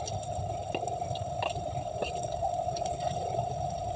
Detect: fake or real real